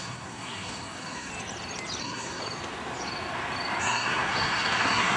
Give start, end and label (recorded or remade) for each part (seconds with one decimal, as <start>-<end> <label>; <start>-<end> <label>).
0.0-1.3 remade; 1.3-2.0 recorded; 2.0-2.4 remade; 2.4-3.8 recorded; 3.8-5.2 remade